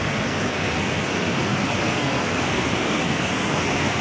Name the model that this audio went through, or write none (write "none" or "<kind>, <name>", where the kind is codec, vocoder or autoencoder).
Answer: codec, SNAC